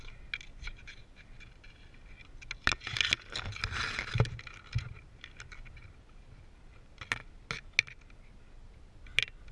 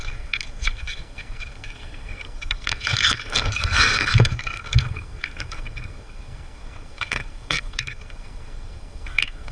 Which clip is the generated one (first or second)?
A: second